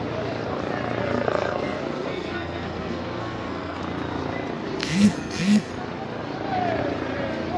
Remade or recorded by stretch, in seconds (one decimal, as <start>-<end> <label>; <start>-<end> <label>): 0.0-1.0 recorded; 1.0-3.8 remade; 3.8-4.8 recorded; 4.8-5.7 remade; 5.7-7.6 recorded